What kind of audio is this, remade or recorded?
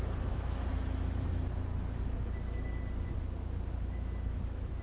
recorded